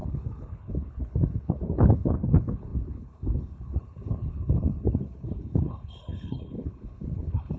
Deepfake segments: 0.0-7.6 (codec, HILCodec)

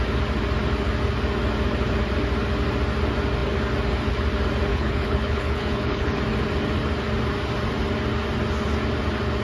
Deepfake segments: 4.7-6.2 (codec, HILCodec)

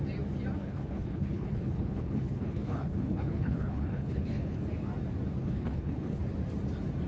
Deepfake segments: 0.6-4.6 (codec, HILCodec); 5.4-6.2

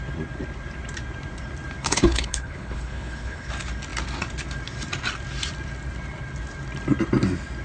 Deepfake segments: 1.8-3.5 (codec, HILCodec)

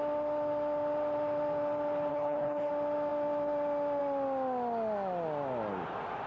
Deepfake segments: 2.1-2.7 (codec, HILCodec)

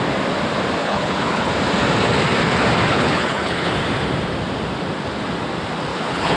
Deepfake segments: 0.8-1.5 (codec, HILCodec); 2.9-3.7; 5.9-6.4

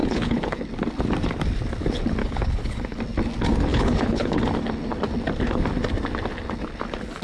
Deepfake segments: 0.0-0.6 (codec, HILCodec); 2.2-3.0; 3.7-4.4